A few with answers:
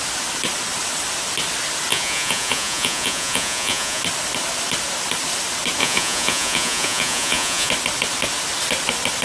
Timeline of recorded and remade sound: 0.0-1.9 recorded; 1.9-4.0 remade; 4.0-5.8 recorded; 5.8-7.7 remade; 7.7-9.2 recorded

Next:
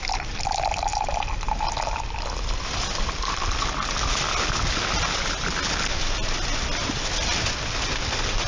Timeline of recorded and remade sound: 0.0-8.5 recorded

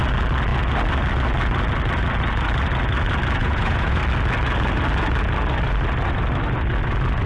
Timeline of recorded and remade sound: 0.0-3.4 recorded; 3.4-4.0 remade; 4.0-7.3 recorded

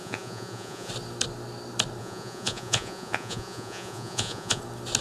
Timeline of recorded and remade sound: 0.0-0.9 remade; 0.9-2.0 recorded; 2.0-4.6 remade; 4.6-5.0 recorded